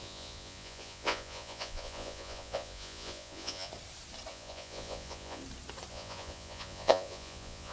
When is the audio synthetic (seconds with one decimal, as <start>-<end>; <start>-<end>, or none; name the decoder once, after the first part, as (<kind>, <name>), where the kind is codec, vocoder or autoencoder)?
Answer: 0.0-3.7 (vocoder, Vocos); 4.3-5.4; 5.9-7.7